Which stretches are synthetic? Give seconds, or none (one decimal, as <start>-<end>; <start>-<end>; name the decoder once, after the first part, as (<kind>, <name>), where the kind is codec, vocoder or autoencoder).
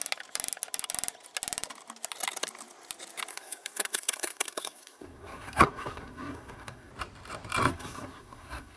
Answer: 3.3-6.9 (codec, SNAC); 7.7-8.8